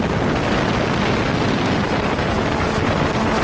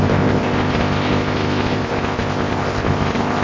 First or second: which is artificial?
second